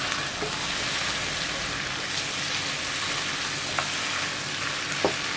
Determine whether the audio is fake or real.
real